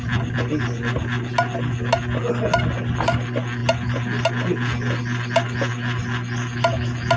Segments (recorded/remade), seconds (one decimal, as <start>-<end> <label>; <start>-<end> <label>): 0.0-7.2 recorded